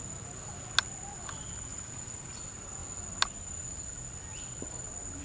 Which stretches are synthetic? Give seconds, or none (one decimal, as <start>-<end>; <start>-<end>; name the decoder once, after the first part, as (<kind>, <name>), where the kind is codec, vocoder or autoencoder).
1.7-2.4 (vocoder, Vocos)